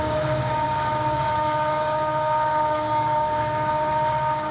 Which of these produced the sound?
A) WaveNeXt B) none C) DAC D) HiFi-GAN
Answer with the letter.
C